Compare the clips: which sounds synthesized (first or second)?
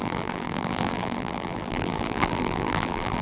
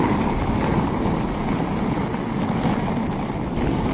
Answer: first